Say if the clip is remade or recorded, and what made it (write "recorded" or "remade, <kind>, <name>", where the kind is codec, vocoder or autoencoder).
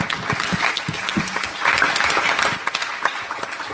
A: recorded